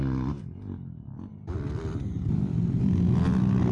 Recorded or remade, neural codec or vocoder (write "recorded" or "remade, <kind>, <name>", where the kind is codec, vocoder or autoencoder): recorded